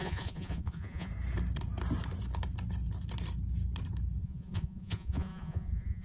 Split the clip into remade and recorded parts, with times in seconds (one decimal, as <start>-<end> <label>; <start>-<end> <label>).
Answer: 0.0-1.1 remade; 1.1-4.2 recorded; 4.2-6.0 remade